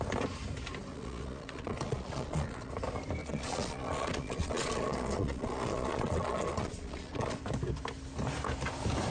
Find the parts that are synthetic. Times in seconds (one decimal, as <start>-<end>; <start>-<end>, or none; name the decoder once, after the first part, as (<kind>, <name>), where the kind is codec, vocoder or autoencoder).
0.9-2.7 (vocoder, Vocos); 3.2-7.4